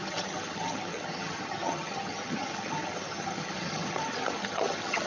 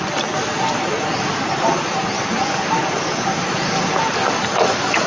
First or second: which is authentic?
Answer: second